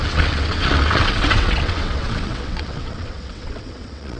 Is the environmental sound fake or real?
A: fake